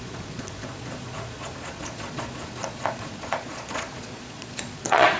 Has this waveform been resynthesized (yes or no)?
yes